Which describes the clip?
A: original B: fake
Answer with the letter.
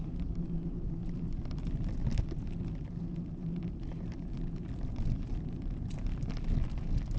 A